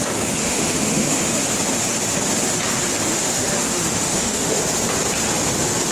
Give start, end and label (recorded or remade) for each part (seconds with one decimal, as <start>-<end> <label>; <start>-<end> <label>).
0.0-0.4 recorded; 0.4-1.4 remade; 1.4-3.1 recorded; 3.1-4.6 remade; 4.6-5.9 recorded